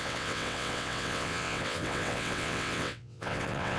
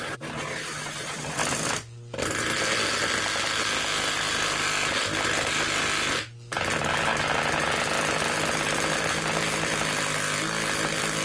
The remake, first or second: first